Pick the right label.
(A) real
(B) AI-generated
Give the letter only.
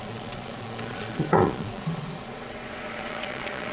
B